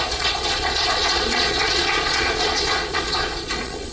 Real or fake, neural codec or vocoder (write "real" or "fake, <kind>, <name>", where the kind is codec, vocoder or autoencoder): fake, vocoder, Vocos